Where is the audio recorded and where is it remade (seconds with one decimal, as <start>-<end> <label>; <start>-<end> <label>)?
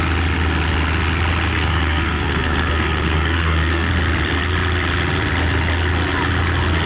0.0-1.5 recorded; 1.5-3.9 remade; 3.9-6.9 recorded